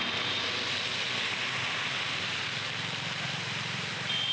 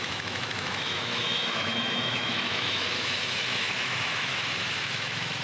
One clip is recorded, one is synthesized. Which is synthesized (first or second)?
second